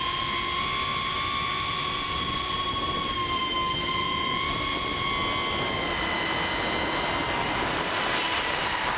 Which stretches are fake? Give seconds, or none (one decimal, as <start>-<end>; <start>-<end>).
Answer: none